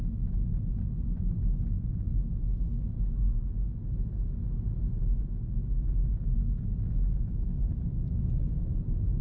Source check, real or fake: real